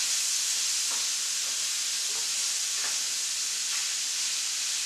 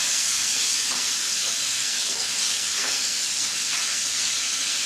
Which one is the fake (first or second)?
second